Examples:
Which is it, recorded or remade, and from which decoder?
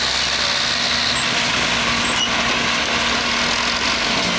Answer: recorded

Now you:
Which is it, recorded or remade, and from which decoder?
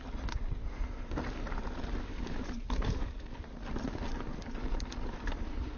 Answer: recorded